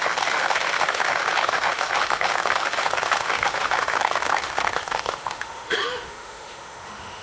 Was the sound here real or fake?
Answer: fake